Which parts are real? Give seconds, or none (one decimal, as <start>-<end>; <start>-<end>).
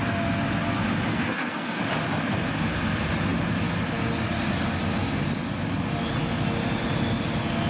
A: 0.0-1.1; 1.8-7.7